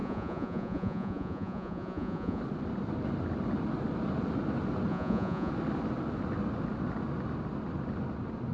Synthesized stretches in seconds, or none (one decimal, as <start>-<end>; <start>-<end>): 0.0-2.4; 4.9-5.5